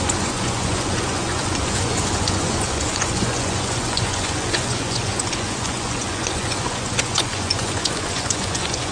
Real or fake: fake